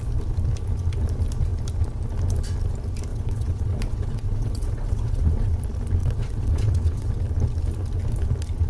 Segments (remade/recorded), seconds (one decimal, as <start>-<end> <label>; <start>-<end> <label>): 0.0-3.1 recorded; 3.1-5.6 remade; 5.6-6.0 recorded; 6.0-7.2 remade; 7.2-8.7 recorded